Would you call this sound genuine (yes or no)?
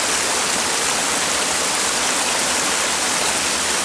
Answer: yes